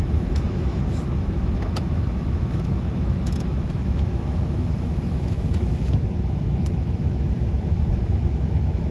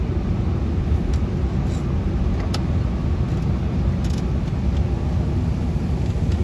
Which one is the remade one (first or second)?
first